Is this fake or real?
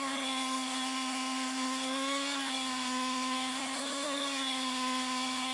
fake